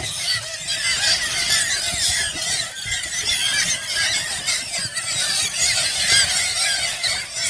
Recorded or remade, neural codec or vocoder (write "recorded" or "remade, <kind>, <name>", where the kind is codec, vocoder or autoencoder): recorded